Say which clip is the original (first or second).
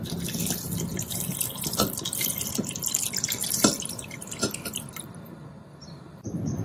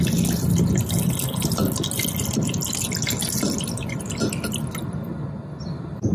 second